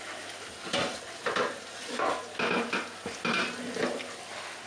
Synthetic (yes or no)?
no